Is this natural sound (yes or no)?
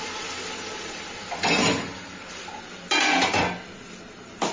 yes